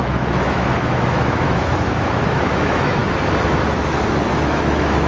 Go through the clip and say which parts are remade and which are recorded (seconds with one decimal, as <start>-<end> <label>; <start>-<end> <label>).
0.0-3.0 remade; 3.0-4.3 recorded; 4.3-5.1 remade